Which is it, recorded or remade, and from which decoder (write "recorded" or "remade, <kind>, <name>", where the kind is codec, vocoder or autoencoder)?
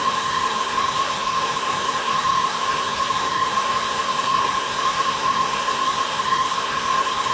remade, codec, SNAC